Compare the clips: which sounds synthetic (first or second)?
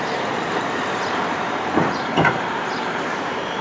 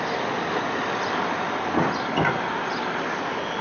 first